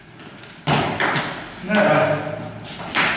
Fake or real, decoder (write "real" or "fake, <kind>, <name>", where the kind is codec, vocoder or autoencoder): real